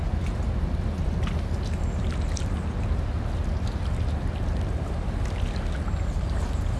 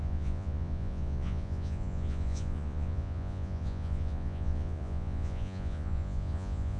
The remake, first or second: second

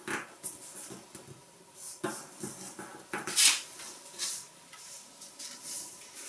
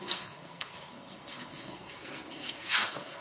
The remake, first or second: second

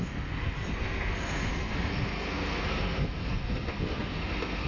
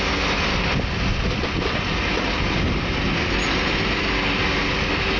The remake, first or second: first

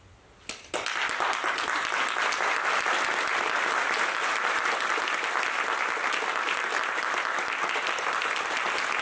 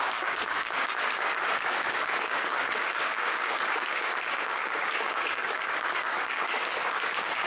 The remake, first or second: second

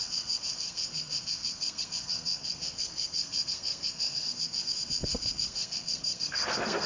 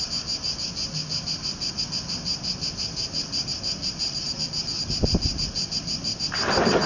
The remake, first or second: first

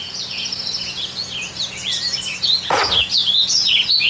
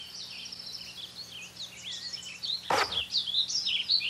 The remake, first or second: first